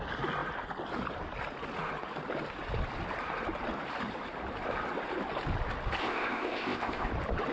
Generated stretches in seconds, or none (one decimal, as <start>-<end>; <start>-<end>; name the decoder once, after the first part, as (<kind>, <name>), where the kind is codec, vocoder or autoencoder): 6.0-7.1 (codec, ZipCodec)